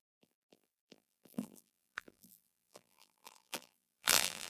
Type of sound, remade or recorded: remade